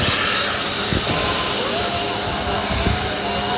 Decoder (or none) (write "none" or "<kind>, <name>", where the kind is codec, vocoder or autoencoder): none